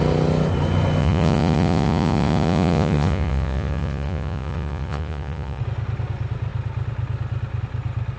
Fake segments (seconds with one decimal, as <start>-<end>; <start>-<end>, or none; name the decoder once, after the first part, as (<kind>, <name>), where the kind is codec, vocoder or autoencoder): 1.0-5.6 (vocoder, Vocos)